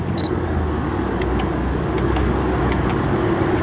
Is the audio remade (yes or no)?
yes